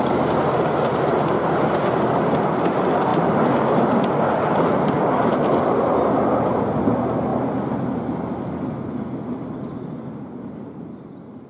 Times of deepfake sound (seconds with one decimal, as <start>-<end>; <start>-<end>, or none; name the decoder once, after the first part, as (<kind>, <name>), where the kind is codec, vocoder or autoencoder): none